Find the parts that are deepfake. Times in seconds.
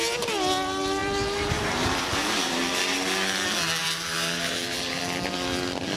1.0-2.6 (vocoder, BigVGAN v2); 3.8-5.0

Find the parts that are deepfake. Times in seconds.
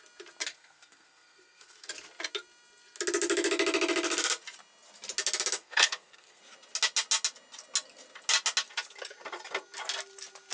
0.5-1.9 (codec, SNAC); 5.6-6.4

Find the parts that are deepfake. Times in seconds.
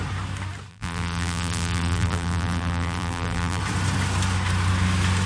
0.7-3.6 (vocoder, BigVGAN v2)